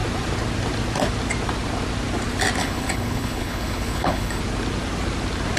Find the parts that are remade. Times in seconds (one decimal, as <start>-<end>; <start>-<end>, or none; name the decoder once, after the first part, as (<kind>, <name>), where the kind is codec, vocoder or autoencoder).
2.6-4.4 (codec, HILCodec)